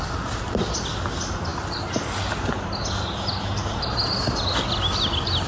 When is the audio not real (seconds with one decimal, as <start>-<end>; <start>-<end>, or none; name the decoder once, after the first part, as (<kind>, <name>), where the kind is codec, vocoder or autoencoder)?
none